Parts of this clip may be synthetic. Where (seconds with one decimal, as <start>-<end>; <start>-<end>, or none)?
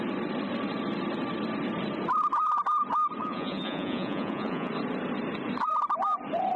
3.2-4.7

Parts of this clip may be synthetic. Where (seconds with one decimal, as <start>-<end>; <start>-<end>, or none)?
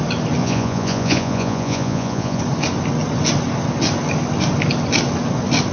0.4-2.4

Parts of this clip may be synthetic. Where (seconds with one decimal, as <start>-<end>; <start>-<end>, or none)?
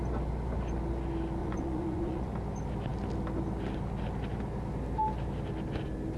1.4-2.3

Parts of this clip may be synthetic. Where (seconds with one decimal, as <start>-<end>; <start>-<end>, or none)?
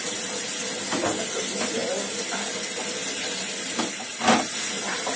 none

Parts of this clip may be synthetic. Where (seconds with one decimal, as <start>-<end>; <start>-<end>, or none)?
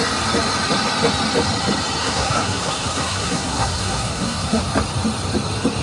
2.0-4.6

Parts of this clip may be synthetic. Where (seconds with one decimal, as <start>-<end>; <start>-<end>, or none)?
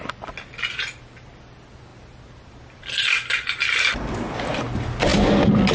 none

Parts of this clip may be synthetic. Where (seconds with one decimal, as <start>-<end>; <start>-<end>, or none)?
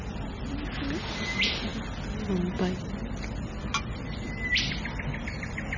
none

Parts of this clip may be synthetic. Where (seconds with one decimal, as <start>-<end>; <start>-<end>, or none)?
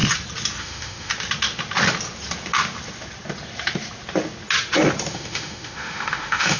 0.6-1.1; 5.1-6.6